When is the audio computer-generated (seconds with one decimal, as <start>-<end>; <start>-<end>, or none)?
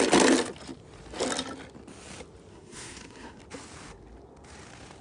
2.5-3.4